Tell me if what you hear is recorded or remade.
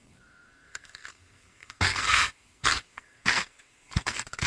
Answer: remade